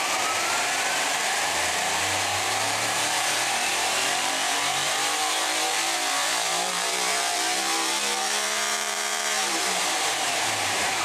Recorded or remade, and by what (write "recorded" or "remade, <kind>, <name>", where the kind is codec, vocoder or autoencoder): remade, vocoder, BigVGAN v2